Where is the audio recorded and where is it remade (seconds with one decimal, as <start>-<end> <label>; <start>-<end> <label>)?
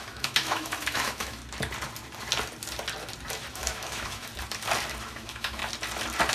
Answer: 0.0-1.4 remade; 1.4-3.5 recorded; 3.5-4.3 remade; 4.3-5.0 recorded; 5.0-5.6 remade; 5.6-6.3 recorded